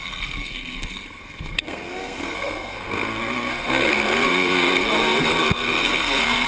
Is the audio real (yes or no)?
no